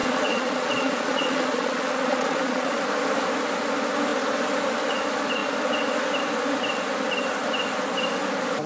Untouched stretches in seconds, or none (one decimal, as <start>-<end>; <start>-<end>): 2.8-8.7